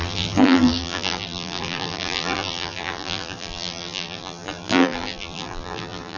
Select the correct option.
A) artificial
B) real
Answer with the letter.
A